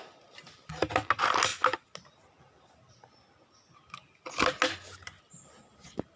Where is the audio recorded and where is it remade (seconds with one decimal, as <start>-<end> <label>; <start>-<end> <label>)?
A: 0.0-6.2 recorded